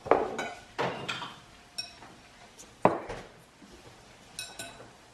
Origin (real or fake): real